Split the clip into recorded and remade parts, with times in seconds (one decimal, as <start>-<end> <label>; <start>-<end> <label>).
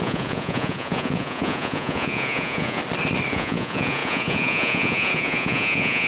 0.0-2.8 remade; 2.8-3.3 recorded; 3.3-6.1 remade